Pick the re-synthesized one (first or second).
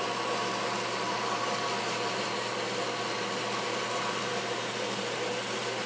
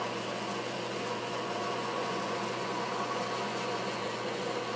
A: second